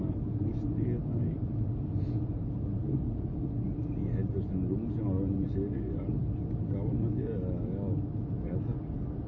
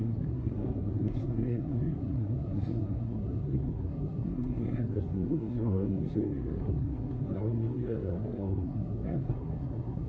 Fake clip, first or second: second